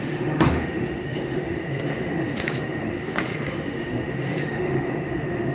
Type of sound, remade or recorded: remade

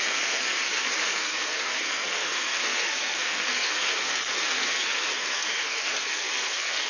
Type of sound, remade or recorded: remade